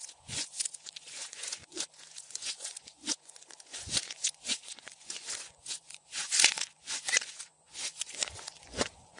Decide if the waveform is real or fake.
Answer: fake